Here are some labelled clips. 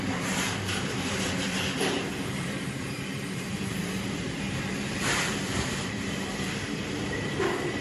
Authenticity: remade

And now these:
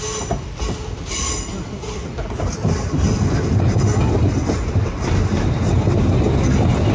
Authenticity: recorded